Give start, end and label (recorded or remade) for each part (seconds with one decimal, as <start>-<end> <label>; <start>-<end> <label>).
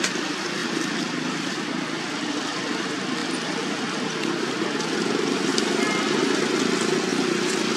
0.0-0.6 recorded; 0.6-1.5 remade; 1.5-3.2 recorded; 3.2-5.5 remade; 5.5-7.8 recorded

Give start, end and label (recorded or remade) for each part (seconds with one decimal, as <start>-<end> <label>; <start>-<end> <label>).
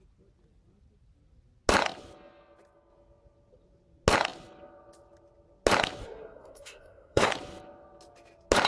0.0-6.0 recorded; 6.0-7.3 remade; 7.3-8.7 recorded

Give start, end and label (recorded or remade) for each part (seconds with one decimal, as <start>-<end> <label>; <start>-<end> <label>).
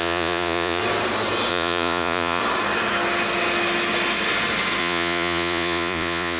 0.0-0.8 remade; 0.8-1.5 recorded; 1.5-2.4 remade; 2.4-4.8 recorded; 4.8-6.4 remade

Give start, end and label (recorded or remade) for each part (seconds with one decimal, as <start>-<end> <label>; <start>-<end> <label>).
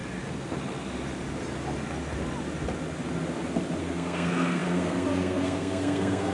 0.0-3.8 recorded; 3.8-6.3 remade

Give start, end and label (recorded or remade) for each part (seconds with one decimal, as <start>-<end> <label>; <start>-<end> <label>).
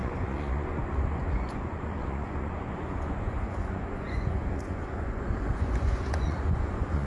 0.0-7.1 remade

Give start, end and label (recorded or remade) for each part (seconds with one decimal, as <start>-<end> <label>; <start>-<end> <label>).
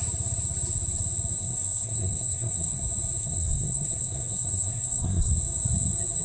0.0-1.4 recorded; 1.4-2.8 remade; 2.8-3.2 recorded; 3.2-5.3 remade; 5.3-6.2 recorded